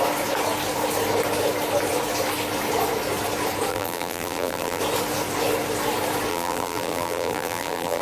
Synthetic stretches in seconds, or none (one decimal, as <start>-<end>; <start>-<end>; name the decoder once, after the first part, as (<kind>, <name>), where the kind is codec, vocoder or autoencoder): 3.7-4.8 (vocoder, BigVGAN v2); 6.3-8.0